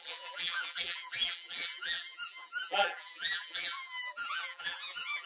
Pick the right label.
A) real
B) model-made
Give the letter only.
B